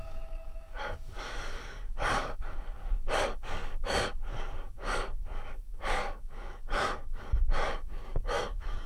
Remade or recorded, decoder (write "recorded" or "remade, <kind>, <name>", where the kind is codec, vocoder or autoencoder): remade, codec, DAC